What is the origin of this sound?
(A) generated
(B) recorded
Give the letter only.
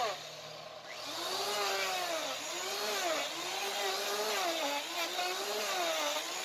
B